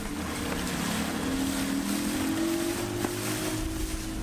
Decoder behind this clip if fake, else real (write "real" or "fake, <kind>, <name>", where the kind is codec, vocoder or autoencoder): real